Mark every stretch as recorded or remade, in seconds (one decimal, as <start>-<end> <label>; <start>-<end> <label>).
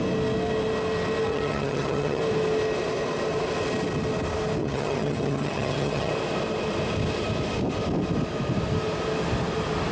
0.0-1.3 recorded; 1.3-2.2 remade; 2.2-4.6 recorded; 4.6-6.1 remade; 6.1-9.9 recorded